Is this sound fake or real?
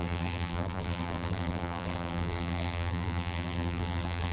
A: fake